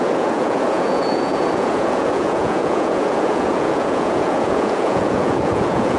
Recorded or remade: remade